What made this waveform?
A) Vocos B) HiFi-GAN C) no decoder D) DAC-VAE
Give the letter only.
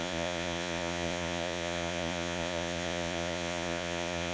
A